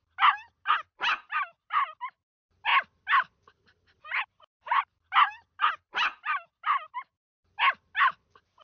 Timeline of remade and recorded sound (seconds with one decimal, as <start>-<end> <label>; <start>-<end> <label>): 0.0-1.6 recorded; 1.6-2.1 remade; 2.1-8.6 recorded